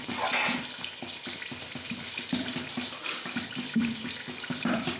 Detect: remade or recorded recorded